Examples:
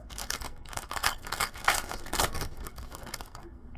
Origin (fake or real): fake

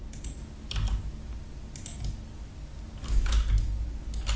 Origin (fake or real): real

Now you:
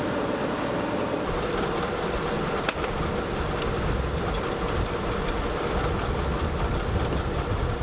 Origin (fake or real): real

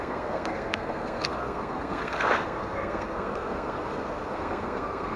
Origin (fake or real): fake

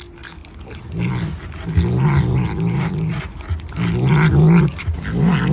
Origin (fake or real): real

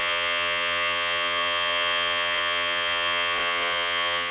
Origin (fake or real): fake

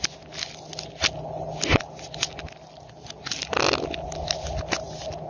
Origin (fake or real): real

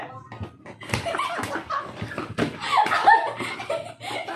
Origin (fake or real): real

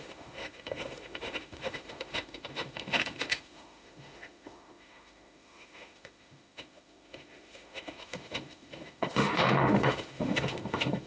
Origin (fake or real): fake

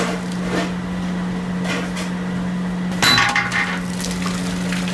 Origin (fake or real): real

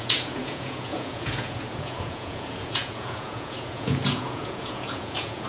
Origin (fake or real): fake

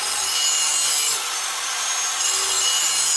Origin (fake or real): real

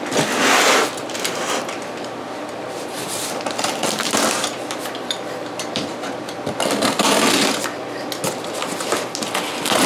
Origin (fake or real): real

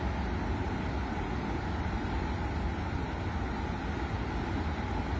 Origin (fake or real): real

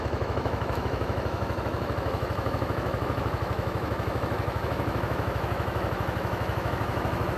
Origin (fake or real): fake